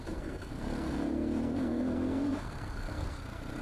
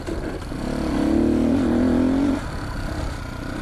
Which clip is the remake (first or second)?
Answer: first